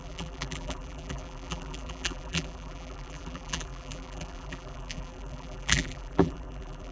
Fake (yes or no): yes